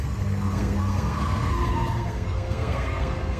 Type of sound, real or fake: fake